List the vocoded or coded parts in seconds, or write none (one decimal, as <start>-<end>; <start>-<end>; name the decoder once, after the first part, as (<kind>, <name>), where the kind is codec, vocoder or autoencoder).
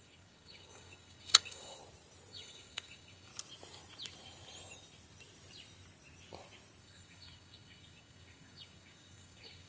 0.0-1.8 (codec, DAC); 2.3-3.3; 6.8-9.7